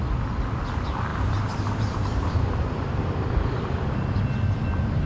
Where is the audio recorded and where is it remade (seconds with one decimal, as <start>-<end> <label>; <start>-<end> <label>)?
0.0-1.1 recorded; 1.1-4.2 remade; 4.2-5.1 recorded